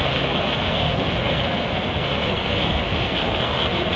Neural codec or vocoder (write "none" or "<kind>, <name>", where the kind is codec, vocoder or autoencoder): codec, SNAC